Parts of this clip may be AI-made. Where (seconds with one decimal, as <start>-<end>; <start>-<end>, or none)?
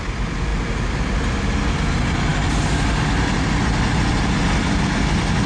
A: none